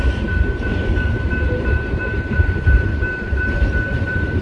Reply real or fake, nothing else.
fake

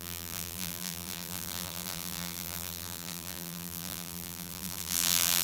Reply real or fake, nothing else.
fake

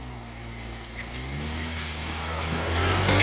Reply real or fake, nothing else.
fake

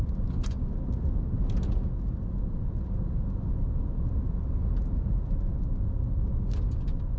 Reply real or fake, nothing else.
real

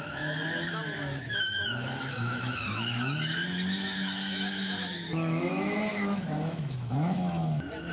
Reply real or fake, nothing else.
fake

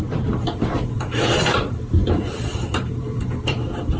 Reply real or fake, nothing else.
fake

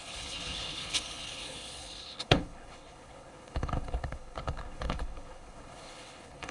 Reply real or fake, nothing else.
fake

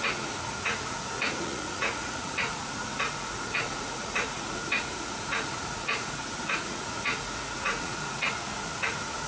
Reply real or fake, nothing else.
fake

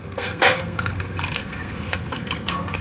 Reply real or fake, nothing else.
fake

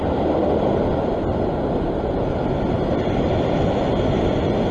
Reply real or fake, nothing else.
real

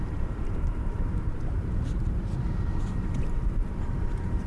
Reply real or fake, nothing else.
fake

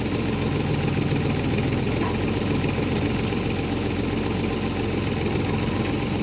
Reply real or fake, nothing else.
real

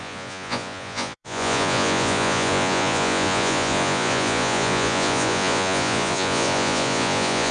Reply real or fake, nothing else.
fake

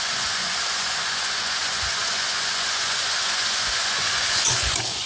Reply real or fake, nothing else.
fake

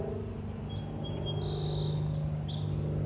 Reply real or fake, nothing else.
real